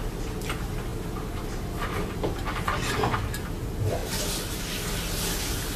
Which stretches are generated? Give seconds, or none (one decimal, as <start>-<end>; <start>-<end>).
none